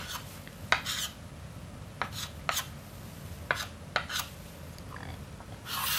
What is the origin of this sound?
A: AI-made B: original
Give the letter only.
B